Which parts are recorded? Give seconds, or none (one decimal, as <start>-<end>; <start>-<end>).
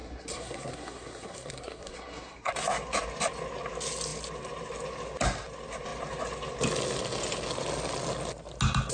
2.5-8.9